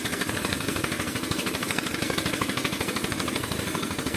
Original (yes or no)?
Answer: no